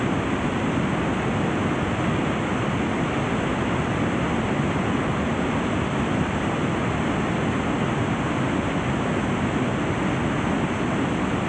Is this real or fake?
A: real